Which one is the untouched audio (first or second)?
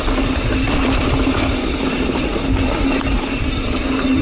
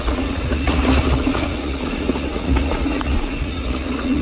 first